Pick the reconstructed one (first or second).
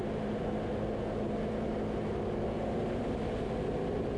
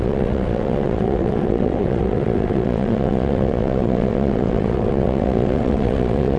second